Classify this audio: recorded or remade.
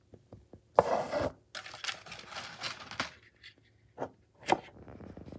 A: recorded